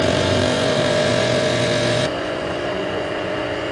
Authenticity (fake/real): fake